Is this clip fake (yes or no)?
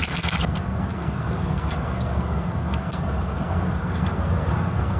yes